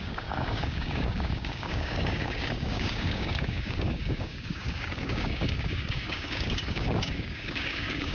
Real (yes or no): no